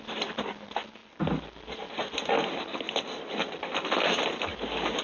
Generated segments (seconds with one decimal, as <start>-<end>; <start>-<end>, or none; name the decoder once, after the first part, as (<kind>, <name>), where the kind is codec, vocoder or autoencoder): none